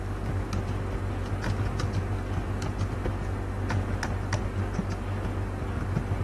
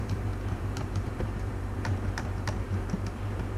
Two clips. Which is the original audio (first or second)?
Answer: first